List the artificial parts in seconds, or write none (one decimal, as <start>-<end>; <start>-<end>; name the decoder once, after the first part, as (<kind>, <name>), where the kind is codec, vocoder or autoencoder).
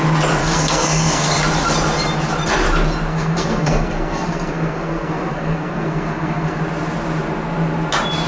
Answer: 0.4-1.4 (codec, SNAC); 3.1-6.6